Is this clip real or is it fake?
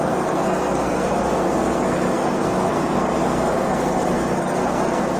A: fake